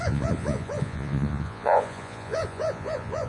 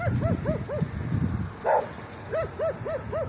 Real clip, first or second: second